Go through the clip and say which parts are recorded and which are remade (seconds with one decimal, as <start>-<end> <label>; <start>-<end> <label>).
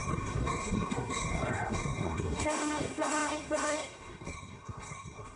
0.0-5.4 remade